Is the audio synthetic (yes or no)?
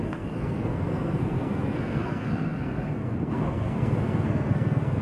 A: yes